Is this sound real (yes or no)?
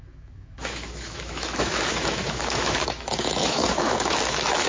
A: no